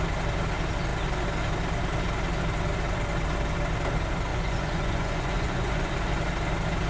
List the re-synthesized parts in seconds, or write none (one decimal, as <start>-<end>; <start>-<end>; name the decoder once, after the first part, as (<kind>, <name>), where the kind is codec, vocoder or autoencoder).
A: 4.3-5.9 (vocoder, Vocos)